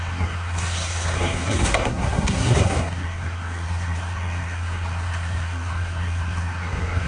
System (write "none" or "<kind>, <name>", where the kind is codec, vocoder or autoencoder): codec, SNAC